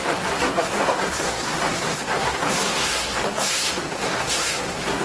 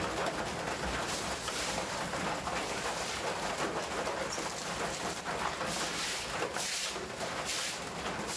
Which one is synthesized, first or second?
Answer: first